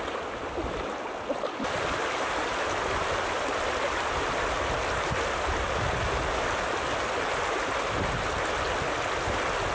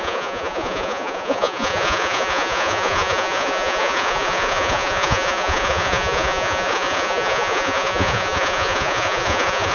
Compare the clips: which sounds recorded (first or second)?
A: first